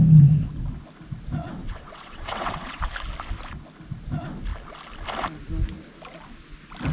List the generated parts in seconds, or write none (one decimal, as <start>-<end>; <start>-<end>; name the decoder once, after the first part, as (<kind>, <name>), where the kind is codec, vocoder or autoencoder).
1.4-2.8 (vocoder, WaveNeXt)